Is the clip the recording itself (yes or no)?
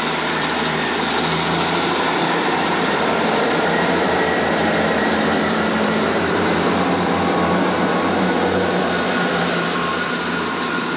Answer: no